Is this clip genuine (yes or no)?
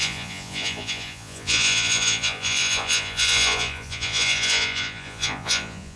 no